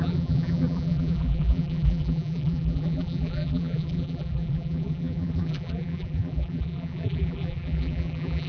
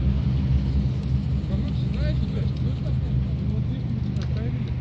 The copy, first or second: first